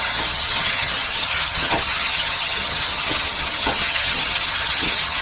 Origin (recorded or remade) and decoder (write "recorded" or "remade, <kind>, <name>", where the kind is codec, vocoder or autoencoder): remade, vocoder, HiFi-GAN